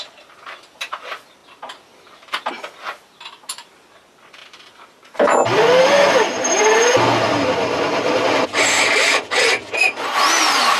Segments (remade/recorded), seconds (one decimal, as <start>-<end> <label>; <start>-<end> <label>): 0.0-10.8 recorded

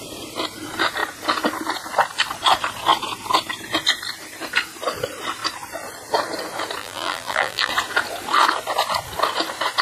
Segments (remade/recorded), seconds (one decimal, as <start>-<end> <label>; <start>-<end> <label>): 0.0-6.8 recorded; 6.8-7.7 remade; 7.7-9.8 recorded

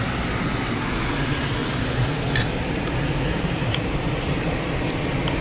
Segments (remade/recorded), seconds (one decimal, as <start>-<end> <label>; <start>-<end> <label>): 0.0-3.3 recorded; 3.3-4.8 remade; 4.8-5.4 recorded

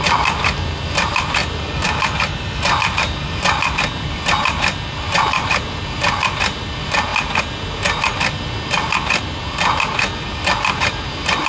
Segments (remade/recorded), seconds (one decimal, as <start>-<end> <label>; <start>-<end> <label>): 0.0-7.1 remade; 7.1-9.2 recorded; 9.2-11.5 remade